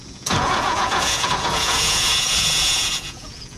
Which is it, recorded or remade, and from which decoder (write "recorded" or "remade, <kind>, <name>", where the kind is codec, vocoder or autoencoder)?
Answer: remade, vocoder, Vocos